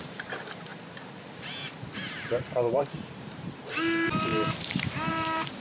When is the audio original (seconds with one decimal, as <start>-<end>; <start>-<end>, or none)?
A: 0.7-2.1